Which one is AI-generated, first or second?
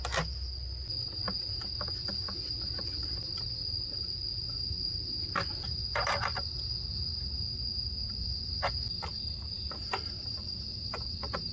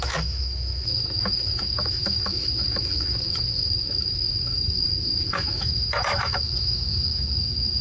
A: second